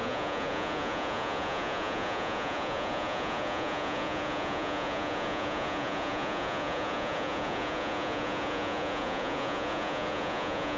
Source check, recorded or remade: remade